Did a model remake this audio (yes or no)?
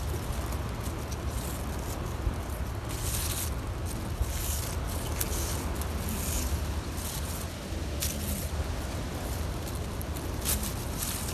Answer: no